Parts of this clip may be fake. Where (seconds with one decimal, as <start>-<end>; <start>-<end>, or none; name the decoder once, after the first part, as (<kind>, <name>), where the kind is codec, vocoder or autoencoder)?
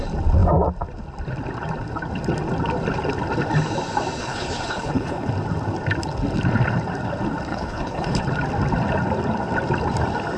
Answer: 4.2-5.3 (codec, HILCodec); 7.5-8.2